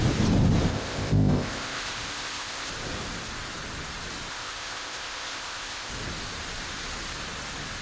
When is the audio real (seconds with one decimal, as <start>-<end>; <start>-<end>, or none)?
0.0-0.7; 2.7-4.3; 5.9-7.8